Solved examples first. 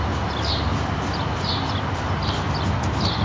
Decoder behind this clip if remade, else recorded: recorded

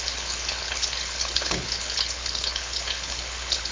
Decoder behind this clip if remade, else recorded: remade, codec, HILCodec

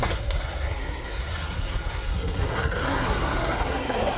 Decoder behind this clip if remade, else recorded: remade, codec, SNAC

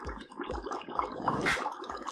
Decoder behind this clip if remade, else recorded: remade, codec, DAC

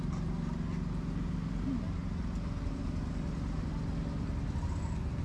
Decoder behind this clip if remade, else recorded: recorded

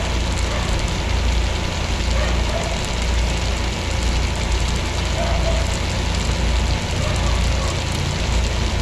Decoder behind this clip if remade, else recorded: recorded